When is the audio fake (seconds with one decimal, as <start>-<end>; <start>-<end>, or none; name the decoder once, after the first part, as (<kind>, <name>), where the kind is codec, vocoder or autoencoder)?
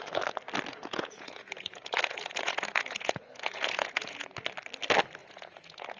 0.7-4.3 (vocoder, Vocos); 5.2-6.0